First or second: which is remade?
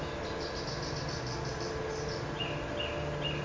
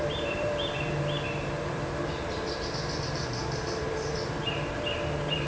second